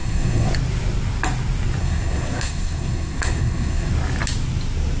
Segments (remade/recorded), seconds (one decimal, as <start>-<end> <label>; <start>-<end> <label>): 0.0-0.5 remade; 0.5-1.8 recorded; 1.8-3.9 remade; 3.9-5.0 recorded